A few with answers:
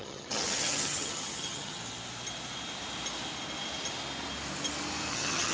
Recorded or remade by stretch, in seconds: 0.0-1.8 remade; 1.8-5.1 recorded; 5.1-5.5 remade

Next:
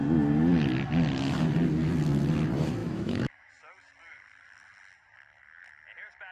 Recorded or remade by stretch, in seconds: 0.0-2.8 recorded; 2.8-3.5 remade; 3.5-6.3 recorded

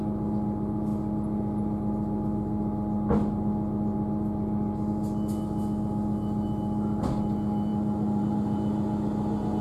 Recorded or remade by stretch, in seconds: 0.0-9.6 recorded